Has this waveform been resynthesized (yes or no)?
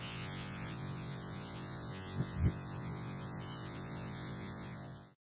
yes